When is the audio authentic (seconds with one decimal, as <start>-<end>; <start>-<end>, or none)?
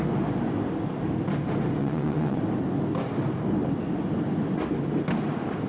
0.0-1.8; 2.4-5.7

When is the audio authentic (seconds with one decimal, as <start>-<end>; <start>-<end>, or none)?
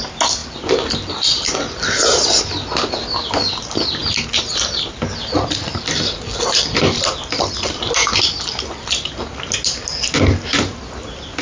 0.0-11.4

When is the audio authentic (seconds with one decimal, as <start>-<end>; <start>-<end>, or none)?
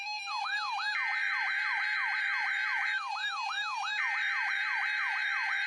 none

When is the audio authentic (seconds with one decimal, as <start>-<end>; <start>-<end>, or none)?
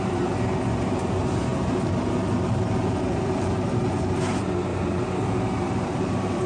0.0-1.5; 3.9-4.7